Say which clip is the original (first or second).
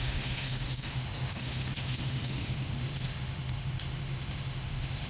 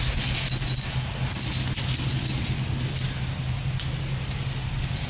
second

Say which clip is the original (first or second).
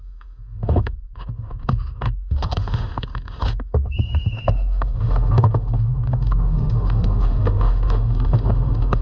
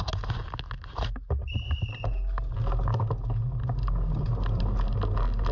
second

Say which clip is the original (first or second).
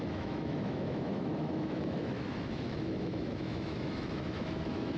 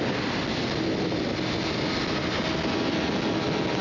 second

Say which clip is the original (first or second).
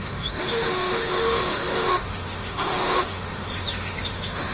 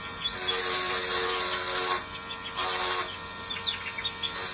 second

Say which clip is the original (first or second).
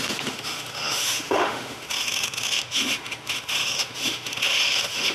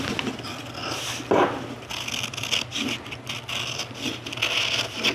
second